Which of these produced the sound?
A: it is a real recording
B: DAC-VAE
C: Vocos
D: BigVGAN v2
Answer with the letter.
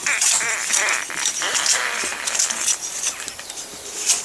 D